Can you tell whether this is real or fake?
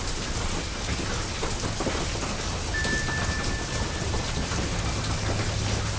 real